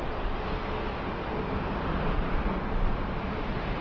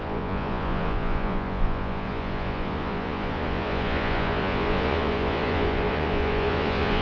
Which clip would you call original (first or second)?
first